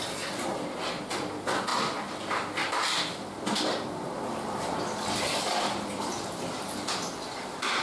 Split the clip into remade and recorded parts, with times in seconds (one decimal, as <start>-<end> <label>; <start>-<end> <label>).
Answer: 0.0-7.8 recorded

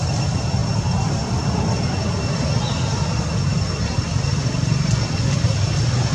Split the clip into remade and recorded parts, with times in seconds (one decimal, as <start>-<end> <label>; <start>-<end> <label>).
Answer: 0.0-0.6 recorded; 0.6-1.3 remade; 1.3-3.5 recorded; 3.5-5.0 remade; 5.0-6.1 recorded

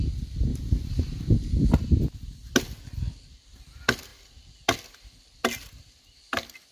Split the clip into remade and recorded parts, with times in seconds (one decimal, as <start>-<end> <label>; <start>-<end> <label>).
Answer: 0.0-0.5 recorded; 0.5-1.7 remade; 1.7-6.7 recorded

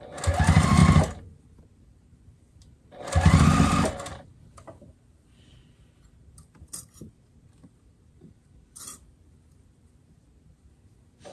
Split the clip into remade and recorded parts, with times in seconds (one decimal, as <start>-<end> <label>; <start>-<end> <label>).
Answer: 0.0-11.3 remade

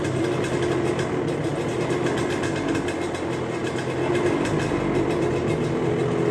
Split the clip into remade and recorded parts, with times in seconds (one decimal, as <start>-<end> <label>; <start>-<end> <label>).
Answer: 0.0-6.3 recorded

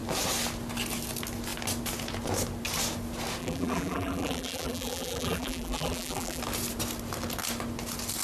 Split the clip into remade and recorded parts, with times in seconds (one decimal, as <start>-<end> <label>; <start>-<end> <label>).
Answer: 0.0-3.4 recorded; 3.4-6.4 remade; 6.4-8.2 recorded

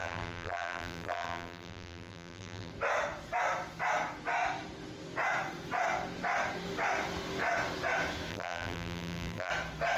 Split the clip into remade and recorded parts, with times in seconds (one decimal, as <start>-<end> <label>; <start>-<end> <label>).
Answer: 0.0-2.7 remade; 2.7-8.3 recorded; 8.3-9.5 remade; 9.5-10.0 recorded

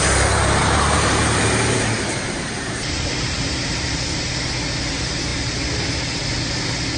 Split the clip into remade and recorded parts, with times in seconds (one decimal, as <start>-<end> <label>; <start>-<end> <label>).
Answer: 0.0-0.6 recorded; 0.6-4.2 remade; 4.2-7.0 recorded